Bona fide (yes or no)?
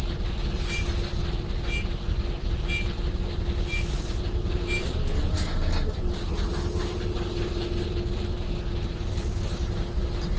yes